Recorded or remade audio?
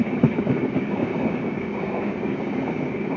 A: remade